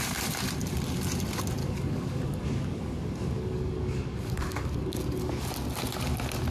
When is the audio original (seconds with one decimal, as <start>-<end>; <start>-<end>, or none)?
0.0-1.6; 5.5-6.5